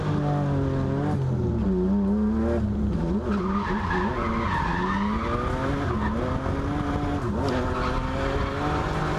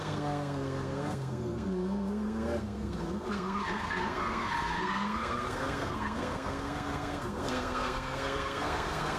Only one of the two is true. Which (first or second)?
first